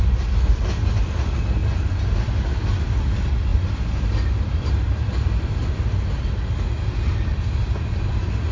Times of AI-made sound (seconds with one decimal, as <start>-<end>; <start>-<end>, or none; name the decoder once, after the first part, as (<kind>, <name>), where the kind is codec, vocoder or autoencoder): none